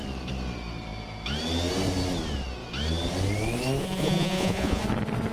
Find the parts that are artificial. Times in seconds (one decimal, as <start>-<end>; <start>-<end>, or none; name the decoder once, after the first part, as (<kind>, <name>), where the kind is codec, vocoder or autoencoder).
3.8-4.8 (vocoder, Vocos)